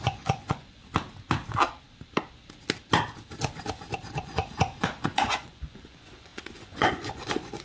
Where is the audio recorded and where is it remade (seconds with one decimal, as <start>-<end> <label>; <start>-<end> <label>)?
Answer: 0.0-0.8 remade; 0.8-4.2 recorded; 4.2-7.6 remade